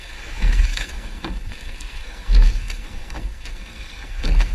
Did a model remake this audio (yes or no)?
yes